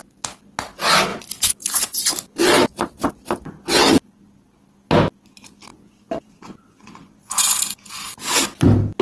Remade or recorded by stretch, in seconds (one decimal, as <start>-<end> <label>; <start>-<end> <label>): 0.0-1.1 recorded; 1.1-2.1 remade; 2.1-5.7 recorded; 5.7-7.9 remade; 7.9-9.0 recorded